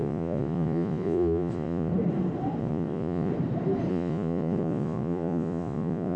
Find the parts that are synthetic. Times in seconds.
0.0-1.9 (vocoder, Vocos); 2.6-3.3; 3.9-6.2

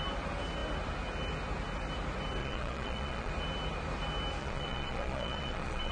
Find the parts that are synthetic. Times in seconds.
2.4-3.3 (vocoder, Vocos); 4.4-5.9

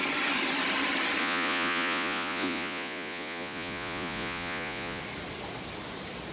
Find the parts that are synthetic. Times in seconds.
1.2-5.0 (vocoder, Vocos)

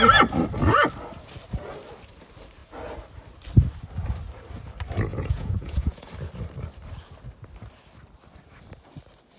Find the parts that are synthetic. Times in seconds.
5.1-6.1 (vocoder, Vocos)

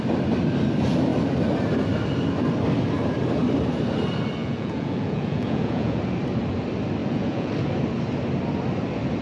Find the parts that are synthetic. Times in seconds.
4.4-6.0 (vocoder, Vocos); 7.0-7.5

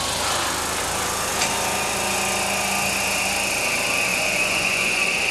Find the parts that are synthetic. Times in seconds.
4.1-5.3 (vocoder, Vocos)